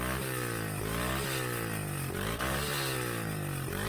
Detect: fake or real real